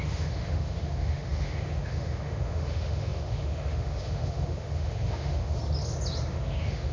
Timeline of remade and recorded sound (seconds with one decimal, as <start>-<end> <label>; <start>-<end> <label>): 0.0-5.6 remade; 5.6-6.3 recorded; 6.3-6.9 remade